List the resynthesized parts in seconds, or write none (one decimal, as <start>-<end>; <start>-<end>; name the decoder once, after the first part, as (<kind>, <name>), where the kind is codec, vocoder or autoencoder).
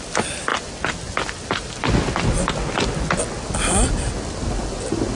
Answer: none